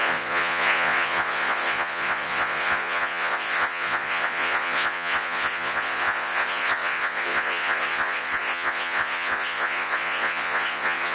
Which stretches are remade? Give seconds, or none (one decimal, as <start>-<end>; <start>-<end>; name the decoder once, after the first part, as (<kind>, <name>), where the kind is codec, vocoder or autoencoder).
0.0-11.1 (vocoder, Vocos)